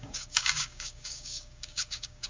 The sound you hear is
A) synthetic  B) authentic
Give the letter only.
A